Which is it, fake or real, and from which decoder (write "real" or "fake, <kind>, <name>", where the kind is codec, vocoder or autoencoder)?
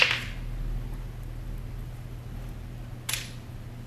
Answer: real